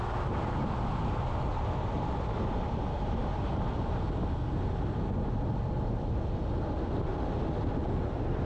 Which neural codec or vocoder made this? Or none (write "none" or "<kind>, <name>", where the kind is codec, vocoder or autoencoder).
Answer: none